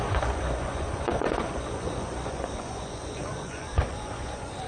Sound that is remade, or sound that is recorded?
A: remade